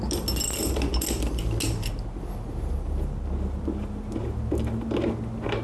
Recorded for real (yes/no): yes